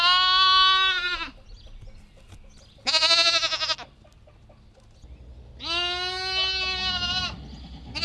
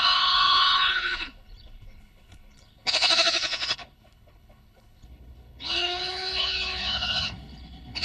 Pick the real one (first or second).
first